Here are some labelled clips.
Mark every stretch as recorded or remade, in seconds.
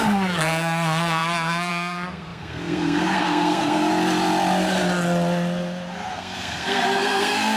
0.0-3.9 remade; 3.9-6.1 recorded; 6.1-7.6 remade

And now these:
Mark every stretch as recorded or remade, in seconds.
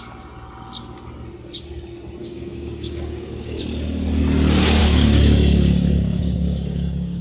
0.0-2.2 recorded; 2.2-3.6 remade; 3.6-4.8 recorded; 4.8-7.2 remade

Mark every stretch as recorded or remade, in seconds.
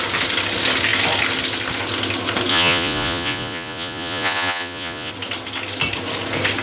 0.0-2.5 recorded; 2.5-5.1 remade; 5.1-6.6 recorded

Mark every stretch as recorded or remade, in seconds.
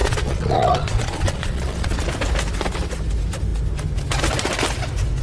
0.0-2.0 remade; 2.0-5.2 recorded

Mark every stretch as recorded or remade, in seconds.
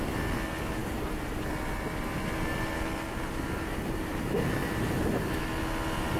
0.0-6.2 recorded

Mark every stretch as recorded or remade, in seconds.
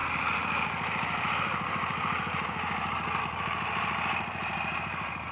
0.0-3.2 remade; 3.2-5.3 recorded